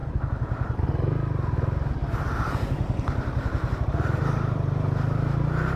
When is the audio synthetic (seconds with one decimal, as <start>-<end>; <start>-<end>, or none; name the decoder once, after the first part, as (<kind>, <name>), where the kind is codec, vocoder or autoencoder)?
0.0-0.8 (vocoder, BigVGAN v2); 2.0-5.8

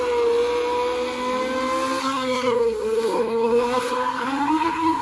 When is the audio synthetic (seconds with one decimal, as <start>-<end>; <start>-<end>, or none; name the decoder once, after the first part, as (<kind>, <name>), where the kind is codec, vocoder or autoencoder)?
2.0-5.0 (codec, SNAC)

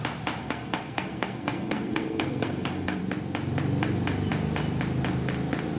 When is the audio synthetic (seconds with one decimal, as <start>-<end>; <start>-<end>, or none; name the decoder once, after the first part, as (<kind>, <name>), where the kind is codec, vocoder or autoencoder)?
0.4-3.0 (codec, SNAC)

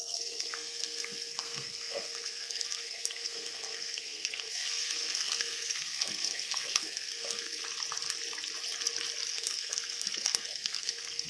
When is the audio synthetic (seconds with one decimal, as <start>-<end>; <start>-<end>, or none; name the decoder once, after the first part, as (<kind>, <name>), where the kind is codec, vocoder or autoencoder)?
0.0-7.6 (codec, SNAC); 9.3-11.3